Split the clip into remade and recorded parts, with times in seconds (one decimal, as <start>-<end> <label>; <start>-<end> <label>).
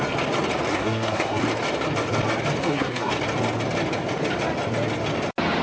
0.0-0.7 recorded; 0.7-1.4 remade; 1.4-2.6 recorded; 2.6-3.1 remade; 3.1-5.6 recorded